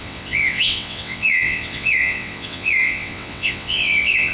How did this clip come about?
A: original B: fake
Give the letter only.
B